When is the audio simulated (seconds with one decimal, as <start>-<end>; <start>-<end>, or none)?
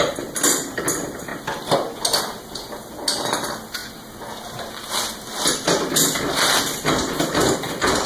0.0-1.3; 2.2-3.8; 5.9-8.1